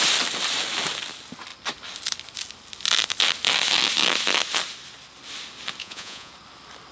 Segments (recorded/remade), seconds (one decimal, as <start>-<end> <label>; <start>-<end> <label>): 0.0-5.8 recorded; 5.8-6.3 remade; 6.3-6.9 recorded